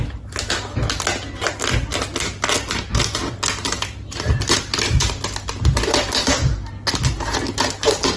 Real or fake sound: real